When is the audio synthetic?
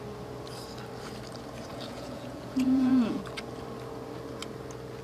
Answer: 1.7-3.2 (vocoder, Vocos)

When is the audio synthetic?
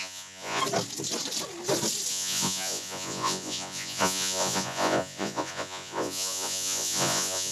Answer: 0.0-0.6 (vocoder, Vocos); 2.1-7.5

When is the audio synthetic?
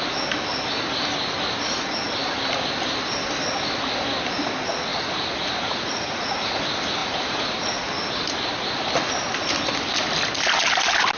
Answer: 4.9-6.6 (vocoder, Vocos); 7.0-7.9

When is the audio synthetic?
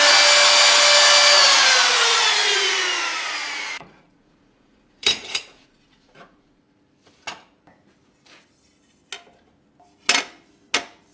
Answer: 1.4-6.6 (vocoder, Vocos)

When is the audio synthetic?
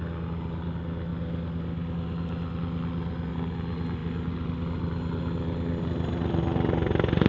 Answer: none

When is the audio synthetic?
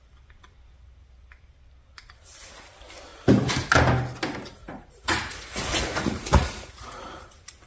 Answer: 4.6-7.3 (vocoder, Vocos)